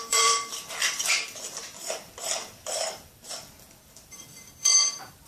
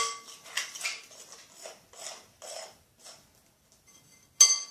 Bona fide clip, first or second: second